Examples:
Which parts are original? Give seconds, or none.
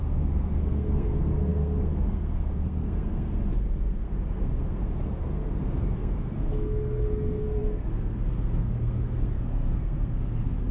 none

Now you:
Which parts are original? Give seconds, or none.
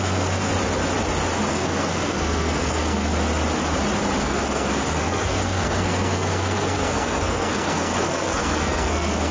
0.5-1.5; 3.1-4.2